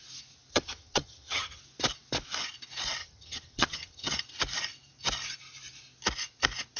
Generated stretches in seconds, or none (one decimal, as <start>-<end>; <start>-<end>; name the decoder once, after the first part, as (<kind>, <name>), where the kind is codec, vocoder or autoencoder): 0.5-1.6 (vocoder, HiFi-GAN); 3.0-4.1